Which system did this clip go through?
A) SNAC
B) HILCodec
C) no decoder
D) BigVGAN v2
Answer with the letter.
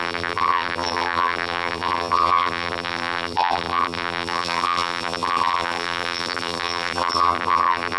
D